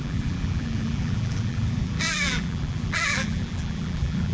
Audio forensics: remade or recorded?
remade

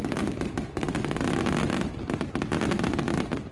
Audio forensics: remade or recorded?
recorded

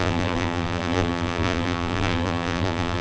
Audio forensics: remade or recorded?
remade